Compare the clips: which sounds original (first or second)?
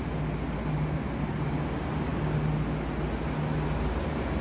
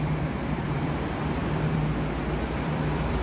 first